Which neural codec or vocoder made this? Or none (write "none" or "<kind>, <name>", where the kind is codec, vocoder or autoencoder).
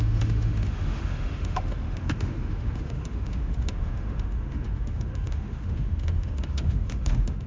autoencoder, DAC-VAE